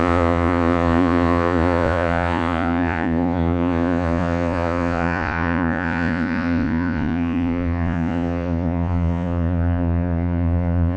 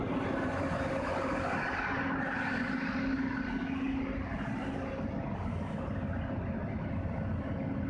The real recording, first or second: second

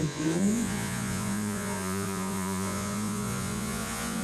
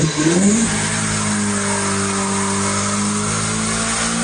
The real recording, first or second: second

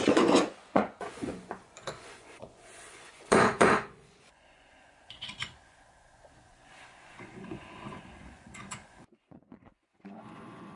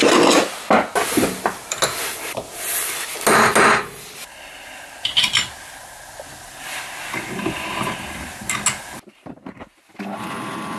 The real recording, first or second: second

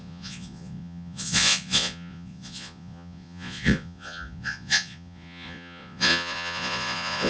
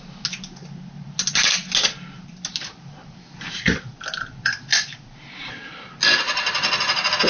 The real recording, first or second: second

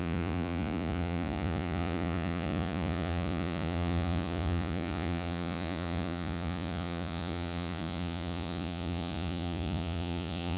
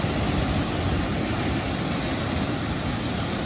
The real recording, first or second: second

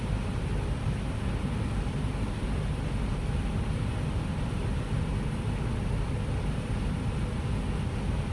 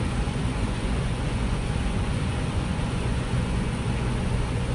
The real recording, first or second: first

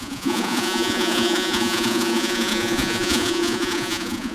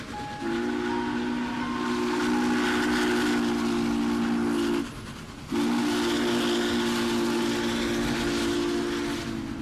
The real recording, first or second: second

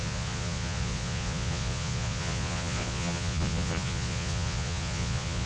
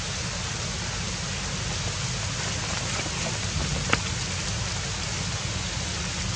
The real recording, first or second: second